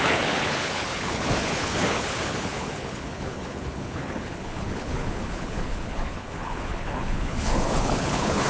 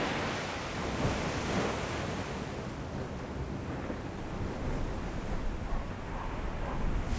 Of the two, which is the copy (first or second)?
first